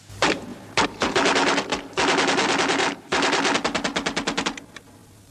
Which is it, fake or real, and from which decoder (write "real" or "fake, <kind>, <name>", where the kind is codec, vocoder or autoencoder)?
real